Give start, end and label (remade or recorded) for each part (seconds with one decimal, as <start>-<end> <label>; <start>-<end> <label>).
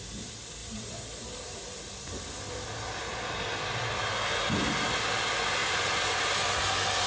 0.0-0.6 recorded; 0.6-1.6 remade; 1.6-5.6 recorded; 5.6-6.4 remade; 6.4-7.1 recorded